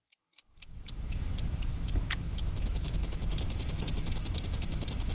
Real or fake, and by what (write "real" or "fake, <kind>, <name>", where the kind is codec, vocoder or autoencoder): fake, autoencoder, DAC-VAE